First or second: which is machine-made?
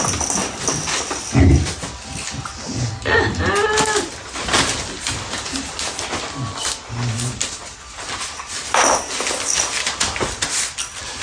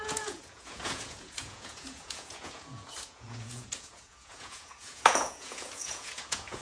second